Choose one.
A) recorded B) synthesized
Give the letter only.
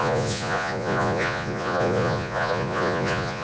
B